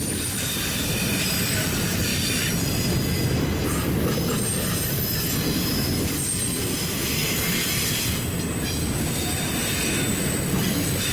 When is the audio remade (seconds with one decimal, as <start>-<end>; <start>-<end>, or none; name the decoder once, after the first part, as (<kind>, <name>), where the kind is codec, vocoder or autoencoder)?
0.0-2.1 (vocoder, BigVGAN v2); 6.0-7.2